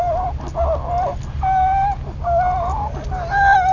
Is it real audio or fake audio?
real